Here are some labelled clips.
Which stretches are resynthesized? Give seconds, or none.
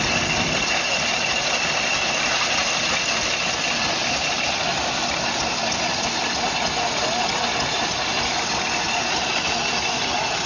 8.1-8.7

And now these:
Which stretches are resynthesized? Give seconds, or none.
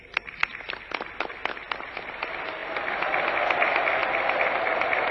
2.6-3.3; 4.0-5.1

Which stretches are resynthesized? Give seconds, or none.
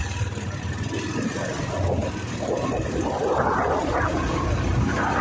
0.0-0.7; 2.0-5.2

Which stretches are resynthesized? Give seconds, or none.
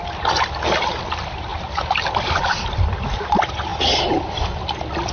1.5-2.9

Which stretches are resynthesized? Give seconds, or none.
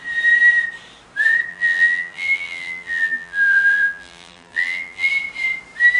1.5-5.1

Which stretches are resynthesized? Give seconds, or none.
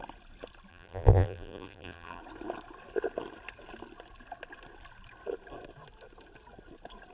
0.7-2.2